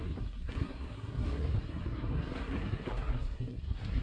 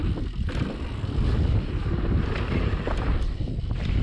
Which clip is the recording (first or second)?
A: second